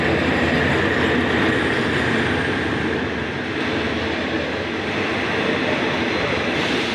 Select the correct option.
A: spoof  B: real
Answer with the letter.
B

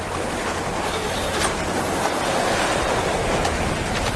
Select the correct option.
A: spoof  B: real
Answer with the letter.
B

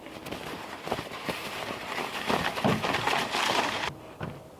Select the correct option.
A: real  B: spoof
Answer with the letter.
A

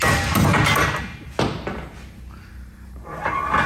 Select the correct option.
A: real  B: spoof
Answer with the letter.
A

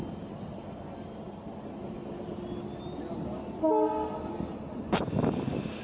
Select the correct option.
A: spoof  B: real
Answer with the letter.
B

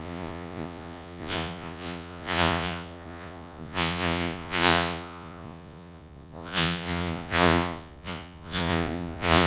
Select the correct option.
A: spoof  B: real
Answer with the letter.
A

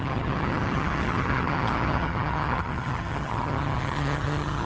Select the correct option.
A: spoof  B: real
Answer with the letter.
A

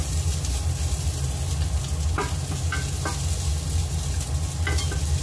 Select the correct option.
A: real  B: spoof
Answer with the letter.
A